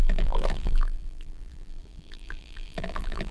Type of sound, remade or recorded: remade